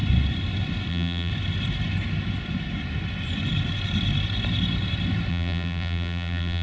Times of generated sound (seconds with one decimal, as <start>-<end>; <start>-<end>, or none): 0.9-1.3; 5.3-6.6